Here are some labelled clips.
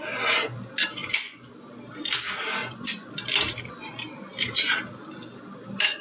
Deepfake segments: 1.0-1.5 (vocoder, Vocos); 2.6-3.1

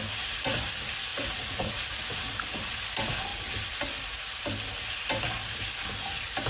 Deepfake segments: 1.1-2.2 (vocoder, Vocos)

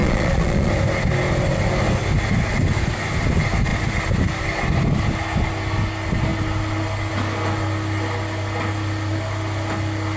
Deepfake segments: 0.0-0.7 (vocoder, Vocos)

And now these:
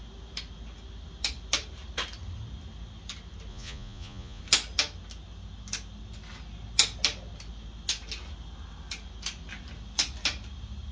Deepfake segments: 3.5-4.4 (vocoder, Vocos)